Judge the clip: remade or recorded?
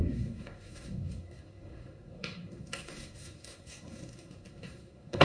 remade